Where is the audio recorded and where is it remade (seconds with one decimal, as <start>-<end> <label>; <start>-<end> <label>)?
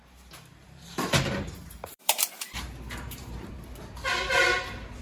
0.0-0.5 recorded; 0.5-3.5 remade; 3.5-5.0 recorded